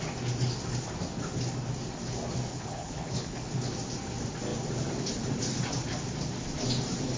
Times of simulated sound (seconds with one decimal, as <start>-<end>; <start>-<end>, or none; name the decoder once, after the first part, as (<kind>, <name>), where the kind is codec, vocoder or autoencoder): 2.5-3.5 (codec, HILCodec)